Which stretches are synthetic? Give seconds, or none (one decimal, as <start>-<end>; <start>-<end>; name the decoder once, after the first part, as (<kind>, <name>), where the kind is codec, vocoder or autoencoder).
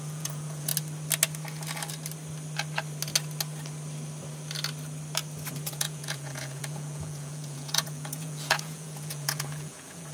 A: 0.0-0.7 (vocoder, Vocos); 5.7-10.1